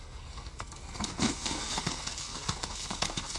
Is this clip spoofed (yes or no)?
yes